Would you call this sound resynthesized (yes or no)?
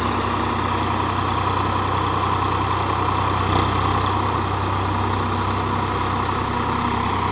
no